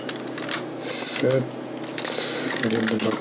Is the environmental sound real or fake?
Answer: real